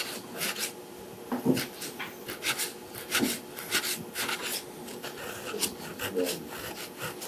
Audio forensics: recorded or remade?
recorded